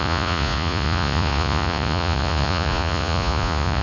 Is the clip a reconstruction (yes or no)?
yes